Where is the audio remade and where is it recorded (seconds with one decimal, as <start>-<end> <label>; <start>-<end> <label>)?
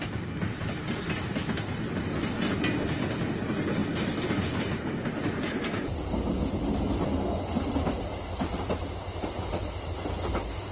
0.0-10.7 recorded